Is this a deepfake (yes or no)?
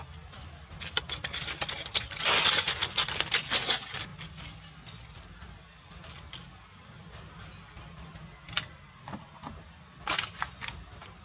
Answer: no